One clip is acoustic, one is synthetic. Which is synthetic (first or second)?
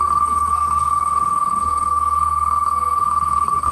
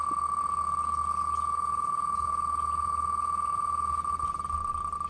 first